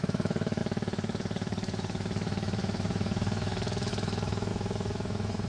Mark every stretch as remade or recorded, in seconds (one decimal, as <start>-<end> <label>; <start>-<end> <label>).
0.0-5.5 remade